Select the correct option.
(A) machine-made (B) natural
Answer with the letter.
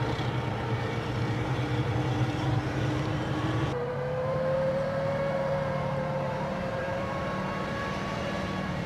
A